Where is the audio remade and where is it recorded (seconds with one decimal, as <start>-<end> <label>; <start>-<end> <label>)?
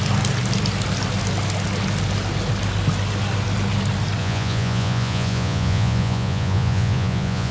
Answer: 0.0-4.2 recorded; 4.2-7.5 remade